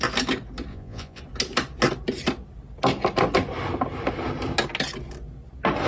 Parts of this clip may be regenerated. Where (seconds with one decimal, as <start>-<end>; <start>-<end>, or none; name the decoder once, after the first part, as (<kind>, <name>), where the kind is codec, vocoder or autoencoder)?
0.7-1.2 (vocoder, Vocos)